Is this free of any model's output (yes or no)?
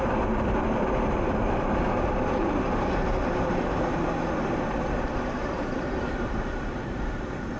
no